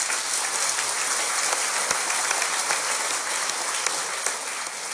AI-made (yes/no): no